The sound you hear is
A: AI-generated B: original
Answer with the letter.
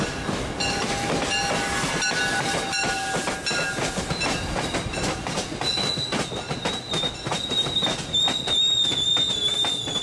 B